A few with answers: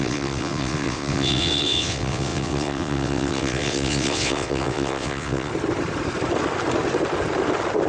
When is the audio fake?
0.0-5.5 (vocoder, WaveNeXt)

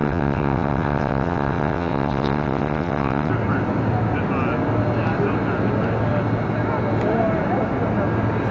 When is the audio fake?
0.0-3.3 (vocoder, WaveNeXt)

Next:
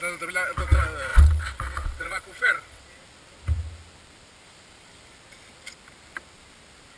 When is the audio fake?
1.1-2.8 (vocoder, WaveNeXt)